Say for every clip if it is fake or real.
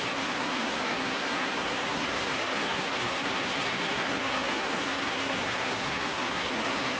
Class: fake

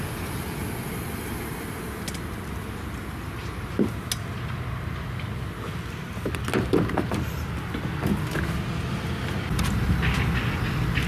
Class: real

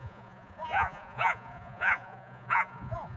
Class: fake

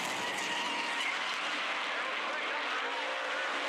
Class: real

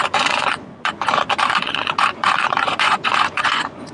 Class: fake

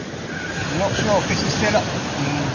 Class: real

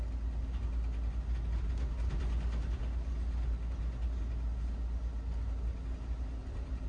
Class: real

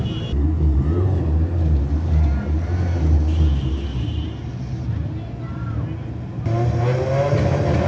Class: real